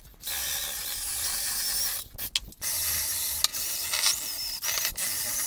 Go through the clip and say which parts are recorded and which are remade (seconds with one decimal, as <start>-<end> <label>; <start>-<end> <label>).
0.0-5.5 recorded

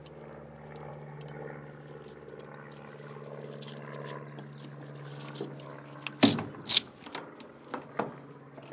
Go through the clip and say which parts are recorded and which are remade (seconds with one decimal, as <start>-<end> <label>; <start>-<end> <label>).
0.0-8.7 recorded

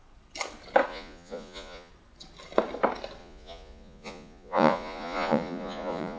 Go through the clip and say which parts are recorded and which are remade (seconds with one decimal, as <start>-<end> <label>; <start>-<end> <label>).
0.0-0.9 recorded; 0.9-1.9 remade; 1.9-3.2 recorded; 3.2-6.2 remade

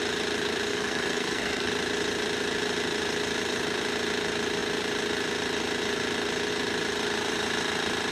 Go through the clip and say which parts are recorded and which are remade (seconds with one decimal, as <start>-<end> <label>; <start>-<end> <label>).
0.0-0.7 recorded; 0.7-1.7 remade; 1.7-8.1 recorded

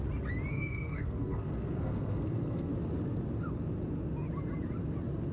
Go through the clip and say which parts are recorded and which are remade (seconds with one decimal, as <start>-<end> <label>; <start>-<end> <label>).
0.0-0.5 recorded; 0.5-2.7 remade; 2.7-5.3 recorded

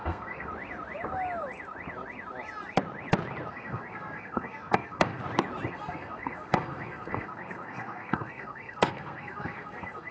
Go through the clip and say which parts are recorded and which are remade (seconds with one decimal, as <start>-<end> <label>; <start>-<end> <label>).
0.0-0.5 remade; 0.5-3.5 recorded; 3.5-5.2 remade; 5.2-5.7 recorded; 5.7-10.1 remade

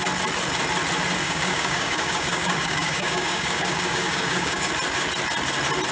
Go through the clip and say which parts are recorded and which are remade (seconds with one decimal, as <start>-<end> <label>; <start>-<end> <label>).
0.0-1.2 recorded; 1.2-4.7 remade; 4.7-5.9 recorded

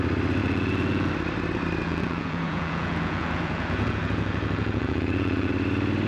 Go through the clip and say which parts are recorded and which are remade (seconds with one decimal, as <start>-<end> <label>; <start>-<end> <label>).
0.0-0.4 recorded; 0.4-1.1 remade; 1.1-1.8 recorded; 1.8-5.5 remade; 5.5-6.1 recorded